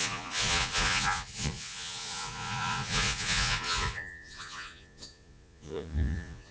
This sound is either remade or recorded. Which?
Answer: remade